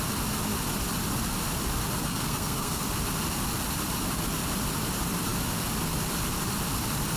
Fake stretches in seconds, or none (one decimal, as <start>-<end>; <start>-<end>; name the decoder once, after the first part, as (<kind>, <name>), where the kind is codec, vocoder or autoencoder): 2.0-2.8 (codec, SNAC)